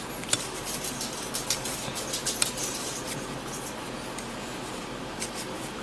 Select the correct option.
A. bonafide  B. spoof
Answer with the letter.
A